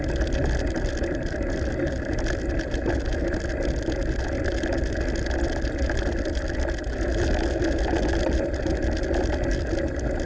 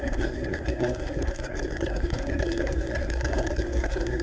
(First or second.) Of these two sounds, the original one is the first